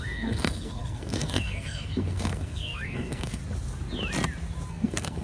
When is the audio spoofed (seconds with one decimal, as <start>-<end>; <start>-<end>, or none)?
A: 0.0-3.4; 4.7-5.2